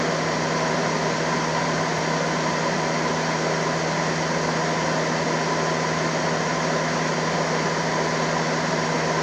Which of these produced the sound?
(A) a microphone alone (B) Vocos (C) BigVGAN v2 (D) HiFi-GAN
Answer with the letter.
A